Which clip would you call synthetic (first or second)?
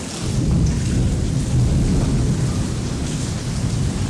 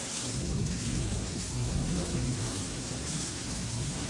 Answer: second